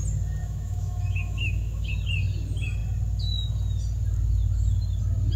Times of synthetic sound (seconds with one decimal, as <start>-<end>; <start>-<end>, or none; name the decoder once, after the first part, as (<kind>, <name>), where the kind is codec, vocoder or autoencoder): 0.4-1.9 (autoencoder, DAC-VAE)